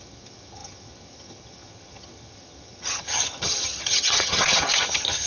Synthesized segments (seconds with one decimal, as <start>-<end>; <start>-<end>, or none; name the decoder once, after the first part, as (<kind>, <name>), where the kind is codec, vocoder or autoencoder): 0.0-5.3 (vocoder, HiFi-GAN)